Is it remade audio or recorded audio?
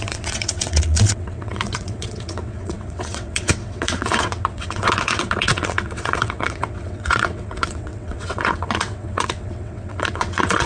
remade